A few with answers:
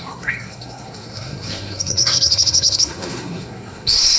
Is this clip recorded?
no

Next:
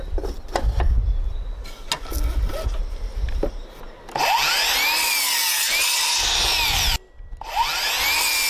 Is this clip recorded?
yes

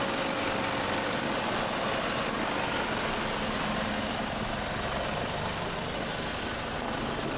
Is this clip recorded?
yes